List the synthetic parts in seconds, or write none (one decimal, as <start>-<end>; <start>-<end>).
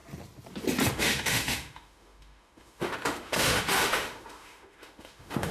0.9-5.5